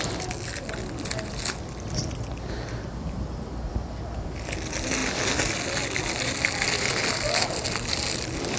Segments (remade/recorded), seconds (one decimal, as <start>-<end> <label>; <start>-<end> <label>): 0.0-8.6 recorded